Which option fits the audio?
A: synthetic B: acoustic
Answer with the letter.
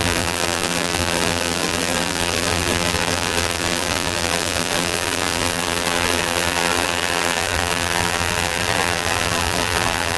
A